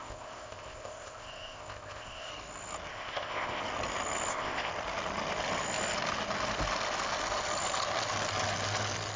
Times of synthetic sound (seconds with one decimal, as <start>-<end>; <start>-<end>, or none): 0.0-2.3; 2.9-3.6; 4.3-4.7